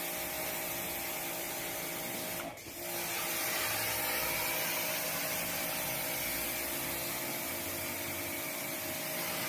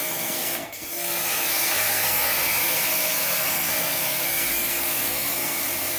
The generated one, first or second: second